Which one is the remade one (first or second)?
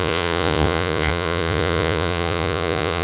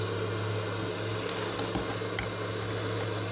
first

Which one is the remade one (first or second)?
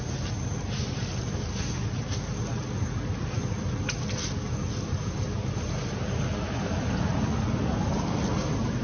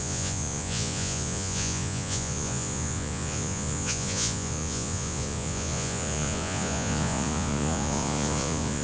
second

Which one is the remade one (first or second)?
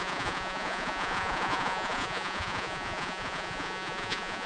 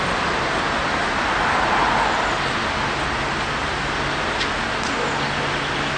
first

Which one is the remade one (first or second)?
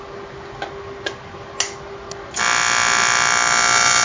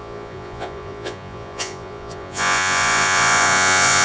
second